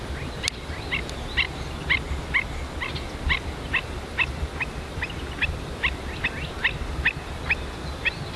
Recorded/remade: recorded